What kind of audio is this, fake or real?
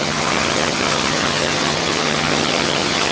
fake